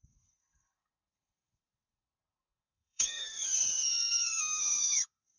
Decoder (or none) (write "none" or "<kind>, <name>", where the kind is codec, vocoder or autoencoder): codec, SNAC